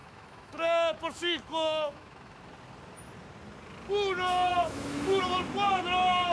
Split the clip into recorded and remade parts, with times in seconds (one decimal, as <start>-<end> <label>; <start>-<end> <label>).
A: 0.0-2.4 remade; 2.4-4.5 recorded; 4.5-5.2 remade; 5.2-6.3 recorded